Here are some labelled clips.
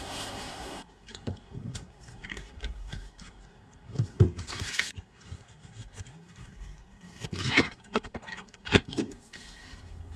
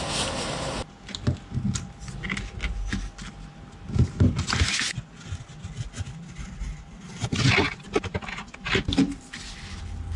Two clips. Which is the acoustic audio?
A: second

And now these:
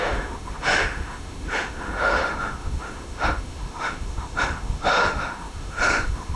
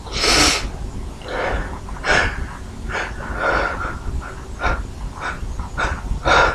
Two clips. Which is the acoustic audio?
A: second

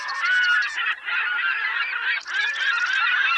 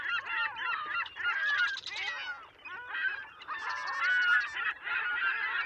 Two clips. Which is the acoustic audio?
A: second